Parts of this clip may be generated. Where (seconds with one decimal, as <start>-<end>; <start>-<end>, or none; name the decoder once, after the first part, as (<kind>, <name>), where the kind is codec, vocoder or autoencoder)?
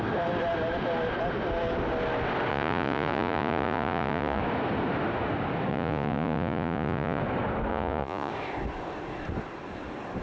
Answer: 2.5-4.4 (vocoder, Vocos); 5.7-7.2; 7.7-8.3